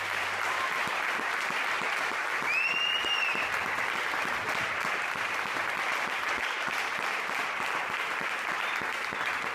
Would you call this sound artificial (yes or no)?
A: no